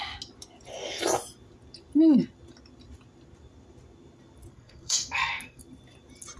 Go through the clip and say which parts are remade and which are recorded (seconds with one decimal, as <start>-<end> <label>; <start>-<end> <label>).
0.0-4.5 recorded; 4.5-5.6 remade; 5.6-6.4 recorded